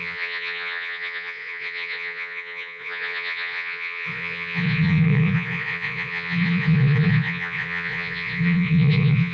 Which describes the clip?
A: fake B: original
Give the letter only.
A